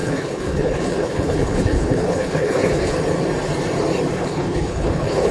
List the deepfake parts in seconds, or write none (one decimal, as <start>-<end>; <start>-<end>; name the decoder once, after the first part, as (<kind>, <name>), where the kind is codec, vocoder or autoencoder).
0.0-2.9 (codec, HILCodec); 4.2-5.3

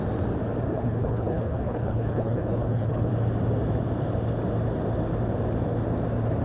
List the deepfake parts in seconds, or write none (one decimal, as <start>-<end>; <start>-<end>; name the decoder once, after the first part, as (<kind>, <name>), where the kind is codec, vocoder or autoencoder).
0.7-3.1 (codec, HILCodec)

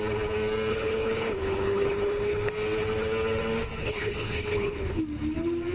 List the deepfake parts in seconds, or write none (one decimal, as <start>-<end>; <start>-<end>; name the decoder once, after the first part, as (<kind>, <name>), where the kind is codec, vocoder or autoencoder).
0.7-2.5 (codec, HILCodec); 3.8-5.0

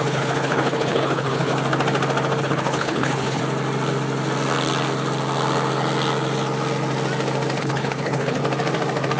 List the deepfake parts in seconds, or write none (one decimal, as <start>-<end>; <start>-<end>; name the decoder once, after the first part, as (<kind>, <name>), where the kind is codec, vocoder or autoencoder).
0.0-1.5 (codec, HILCodec); 2.4-3.4; 7.6-8.4

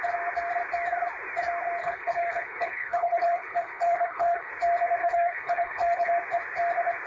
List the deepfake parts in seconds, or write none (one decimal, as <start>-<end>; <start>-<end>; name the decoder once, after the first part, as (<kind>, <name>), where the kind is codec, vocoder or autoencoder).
1.8-4.5 (codec, HILCodec); 5.0-6.1